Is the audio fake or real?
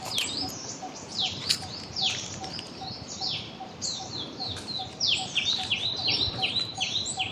fake